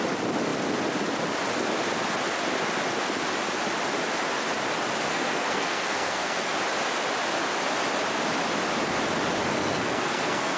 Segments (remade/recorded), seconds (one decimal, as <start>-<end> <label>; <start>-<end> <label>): 0.0-5.1 recorded; 5.1-6.5 remade; 6.5-9.5 recorded; 9.5-10.6 remade